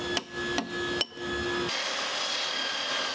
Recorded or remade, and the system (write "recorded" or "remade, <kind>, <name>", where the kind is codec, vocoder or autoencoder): recorded